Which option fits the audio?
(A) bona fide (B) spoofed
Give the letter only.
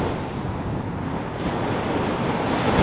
A